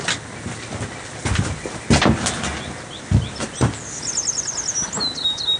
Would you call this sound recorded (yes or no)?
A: yes